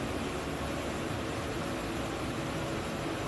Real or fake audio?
real